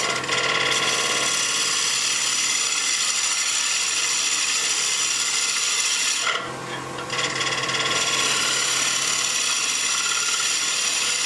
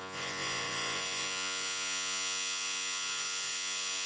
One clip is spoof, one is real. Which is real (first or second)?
first